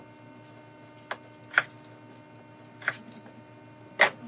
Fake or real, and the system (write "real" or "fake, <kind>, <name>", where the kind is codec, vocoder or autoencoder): real